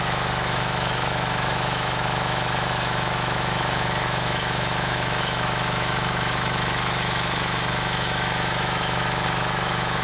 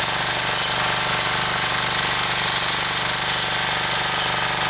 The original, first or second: second